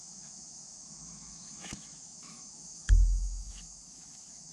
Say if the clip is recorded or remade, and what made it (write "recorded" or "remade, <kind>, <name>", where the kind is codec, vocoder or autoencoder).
remade, autoencoder, DAC-VAE